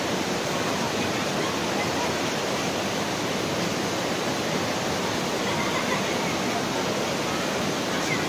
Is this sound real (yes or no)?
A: yes